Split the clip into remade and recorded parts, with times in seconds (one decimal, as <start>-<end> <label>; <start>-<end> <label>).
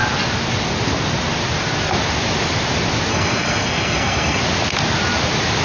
0.0-3.1 recorded; 3.1-4.4 remade; 4.4-5.6 recorded